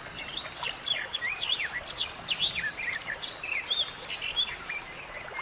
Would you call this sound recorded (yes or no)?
yes